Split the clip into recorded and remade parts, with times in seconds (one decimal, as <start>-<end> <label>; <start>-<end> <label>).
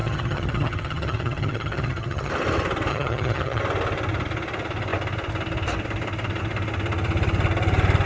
0.0-2.3 remade; 2.3-2.9 recorded; 2.9-3.6 remade; 3.6-8.1 recorded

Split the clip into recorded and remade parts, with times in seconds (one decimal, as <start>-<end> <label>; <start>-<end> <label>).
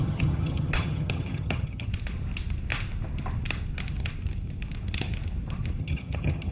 0.0-1.9 remade; 1.9-5.8 recorded; 5.8-6.5 remade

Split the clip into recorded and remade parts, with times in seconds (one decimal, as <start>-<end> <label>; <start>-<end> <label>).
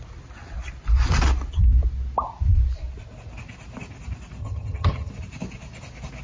0.0-4.4 recorded; 4.4-5.1 remade; 5.1-6.2 recorded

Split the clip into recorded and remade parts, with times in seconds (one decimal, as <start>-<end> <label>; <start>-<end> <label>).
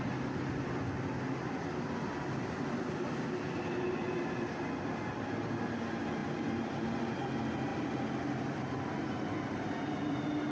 0.0-10.5 recorded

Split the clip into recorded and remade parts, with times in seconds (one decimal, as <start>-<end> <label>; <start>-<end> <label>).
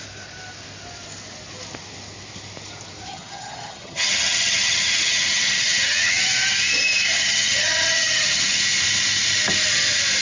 0.0-3.1 recorded; 3.1-6.5 remade; 6.5-7.2 recorded; 7.2-8.6 remade; 8.6-10.2 recorded